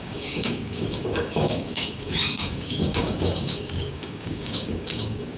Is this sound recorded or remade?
remade